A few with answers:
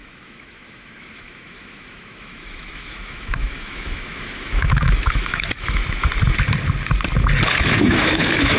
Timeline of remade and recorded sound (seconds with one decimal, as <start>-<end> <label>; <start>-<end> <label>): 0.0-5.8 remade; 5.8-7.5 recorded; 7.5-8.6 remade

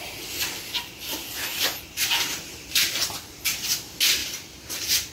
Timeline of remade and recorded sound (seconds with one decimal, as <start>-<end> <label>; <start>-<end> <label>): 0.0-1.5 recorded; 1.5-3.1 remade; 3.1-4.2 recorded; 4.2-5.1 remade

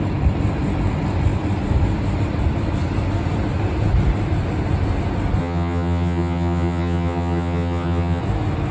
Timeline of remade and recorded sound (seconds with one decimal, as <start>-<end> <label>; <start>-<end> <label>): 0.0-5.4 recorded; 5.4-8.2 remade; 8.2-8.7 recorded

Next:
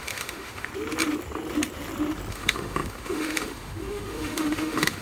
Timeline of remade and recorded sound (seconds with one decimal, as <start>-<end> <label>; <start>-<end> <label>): 0.0-0.7 remade; 0.7-2.3 recorded; 2.3-5.0 remade